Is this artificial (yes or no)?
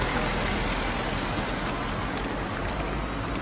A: no